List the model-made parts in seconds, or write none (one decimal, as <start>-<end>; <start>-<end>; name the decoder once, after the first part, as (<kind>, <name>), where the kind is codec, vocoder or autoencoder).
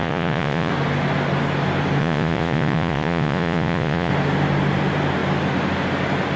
0.0-0.7 (vocoder, Vocos); 2.0-4.1